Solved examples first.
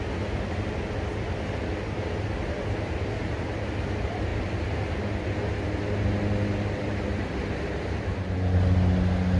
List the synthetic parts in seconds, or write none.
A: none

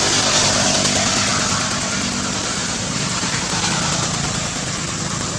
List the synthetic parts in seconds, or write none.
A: 2.6-3.4 (vocoder, BigVGAN v2)